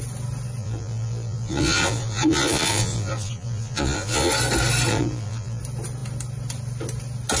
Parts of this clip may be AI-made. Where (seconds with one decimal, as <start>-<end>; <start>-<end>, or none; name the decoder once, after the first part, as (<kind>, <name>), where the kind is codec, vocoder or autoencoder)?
0.6-4.3 (vocoder, Vocos); 4.9-5.6